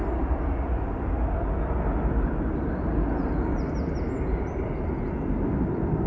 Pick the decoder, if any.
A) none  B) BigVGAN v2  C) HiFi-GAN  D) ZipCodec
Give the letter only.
A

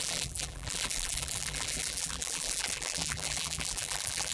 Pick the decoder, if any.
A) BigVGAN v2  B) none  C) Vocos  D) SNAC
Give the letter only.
A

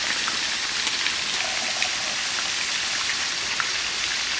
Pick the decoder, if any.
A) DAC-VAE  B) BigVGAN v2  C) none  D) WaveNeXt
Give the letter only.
C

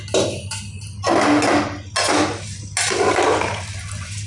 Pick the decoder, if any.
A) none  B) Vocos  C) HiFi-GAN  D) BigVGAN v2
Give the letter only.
A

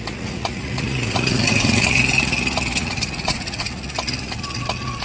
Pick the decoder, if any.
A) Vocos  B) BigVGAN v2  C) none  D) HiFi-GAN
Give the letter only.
A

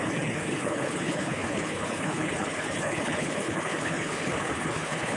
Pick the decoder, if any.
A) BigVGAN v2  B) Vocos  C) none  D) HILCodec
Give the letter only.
D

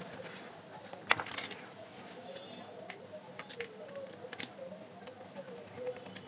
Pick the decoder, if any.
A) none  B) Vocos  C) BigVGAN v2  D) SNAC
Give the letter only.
A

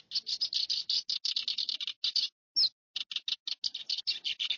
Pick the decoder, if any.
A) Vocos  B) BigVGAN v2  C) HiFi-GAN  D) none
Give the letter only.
D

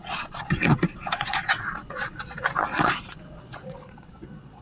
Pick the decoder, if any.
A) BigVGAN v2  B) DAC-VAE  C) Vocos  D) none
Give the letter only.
C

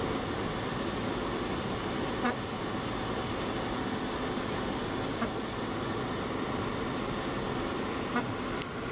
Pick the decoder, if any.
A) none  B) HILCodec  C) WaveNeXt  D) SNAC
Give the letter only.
A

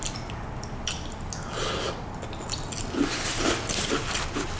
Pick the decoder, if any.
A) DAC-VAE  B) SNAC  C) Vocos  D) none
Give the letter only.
D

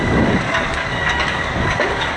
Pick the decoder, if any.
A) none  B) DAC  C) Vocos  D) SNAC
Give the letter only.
B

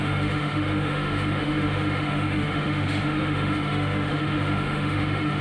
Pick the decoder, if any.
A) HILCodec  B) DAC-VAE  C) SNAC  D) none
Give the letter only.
B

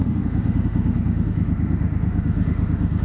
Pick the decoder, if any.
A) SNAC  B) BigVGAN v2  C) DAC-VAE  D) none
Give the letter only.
C